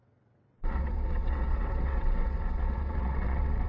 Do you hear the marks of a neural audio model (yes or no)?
yes